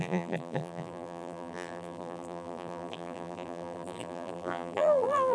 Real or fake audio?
fake